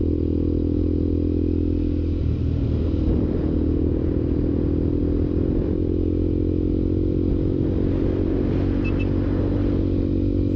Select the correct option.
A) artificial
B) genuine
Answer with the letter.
B